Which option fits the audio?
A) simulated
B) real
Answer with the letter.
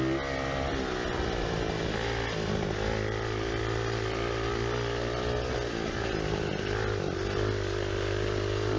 B